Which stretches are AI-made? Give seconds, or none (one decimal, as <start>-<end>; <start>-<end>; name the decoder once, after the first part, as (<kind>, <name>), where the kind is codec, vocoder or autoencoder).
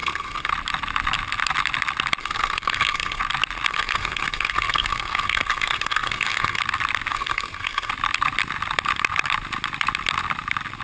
0.0-0.5 (codec, SNAC); 2.2-3.2; 3.7-6.6; 7.1-7.9